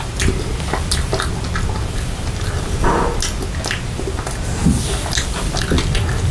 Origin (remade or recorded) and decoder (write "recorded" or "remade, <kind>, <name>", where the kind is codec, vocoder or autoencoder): recorded